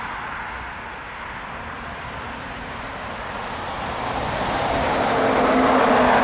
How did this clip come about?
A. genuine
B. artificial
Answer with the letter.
B